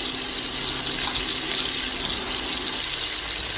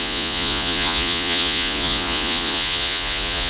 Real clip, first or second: first